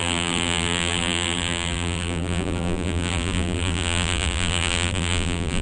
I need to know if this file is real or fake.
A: fake